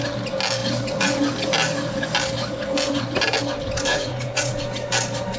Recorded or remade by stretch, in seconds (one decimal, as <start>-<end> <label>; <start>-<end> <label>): 0.0-3.9 recorded; 3.9-4.6 remade; 4.6-5.4 recorded